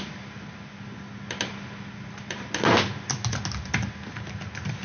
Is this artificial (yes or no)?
no